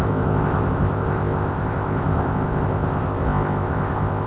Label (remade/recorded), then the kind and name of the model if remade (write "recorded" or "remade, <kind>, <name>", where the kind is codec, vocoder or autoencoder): remade, codec, ZipCodec